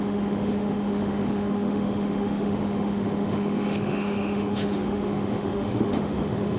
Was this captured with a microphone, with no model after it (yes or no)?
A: no